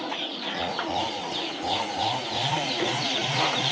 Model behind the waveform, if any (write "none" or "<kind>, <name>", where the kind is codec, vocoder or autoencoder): vocoder, Vocos